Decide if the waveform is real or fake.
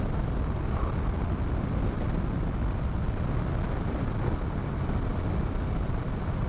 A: real